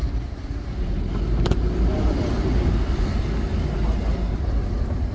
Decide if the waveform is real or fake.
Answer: real